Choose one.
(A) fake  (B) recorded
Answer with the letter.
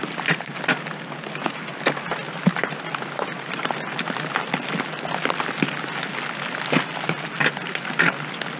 B